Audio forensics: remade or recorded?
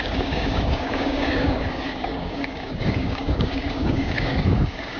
remade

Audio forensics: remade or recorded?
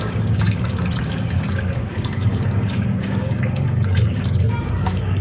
remade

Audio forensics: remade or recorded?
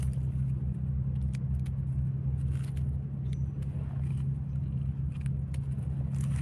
recorded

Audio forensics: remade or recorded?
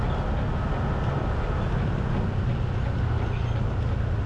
recorded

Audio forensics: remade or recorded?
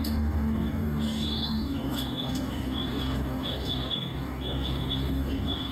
remade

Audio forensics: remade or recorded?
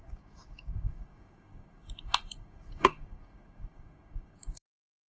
remade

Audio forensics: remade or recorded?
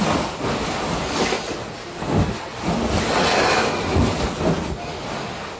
recorded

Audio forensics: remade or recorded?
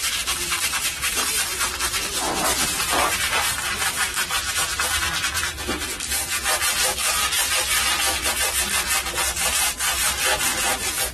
recorded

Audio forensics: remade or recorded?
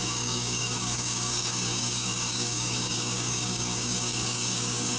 remade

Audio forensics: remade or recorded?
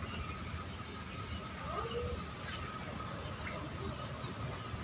recorded